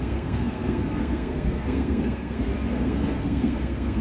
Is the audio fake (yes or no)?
yes